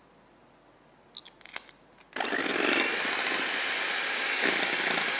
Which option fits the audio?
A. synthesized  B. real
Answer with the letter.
B